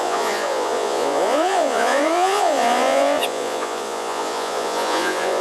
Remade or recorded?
remade